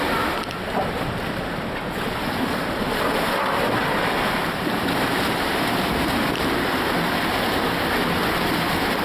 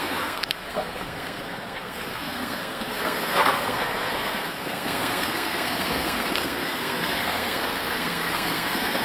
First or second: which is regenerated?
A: second